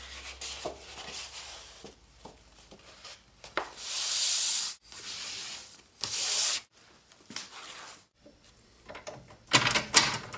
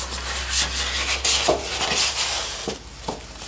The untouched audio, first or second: second